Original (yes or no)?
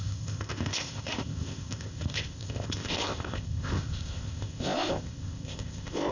no